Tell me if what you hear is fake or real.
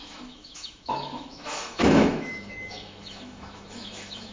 fake